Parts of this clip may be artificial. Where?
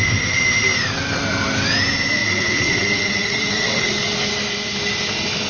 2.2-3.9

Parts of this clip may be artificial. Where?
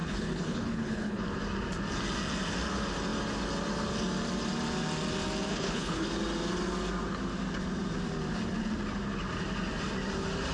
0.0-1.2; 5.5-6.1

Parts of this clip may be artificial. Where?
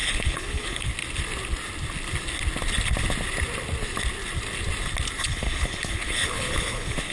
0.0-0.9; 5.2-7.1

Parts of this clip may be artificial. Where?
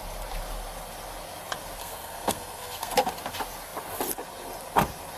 1.8-3.1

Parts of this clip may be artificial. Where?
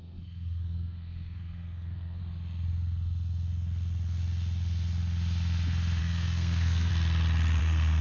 0.0-2.2; 6.0-6.9; 7.6-8.0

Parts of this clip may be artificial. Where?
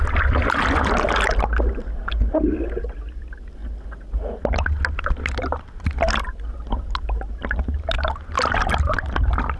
none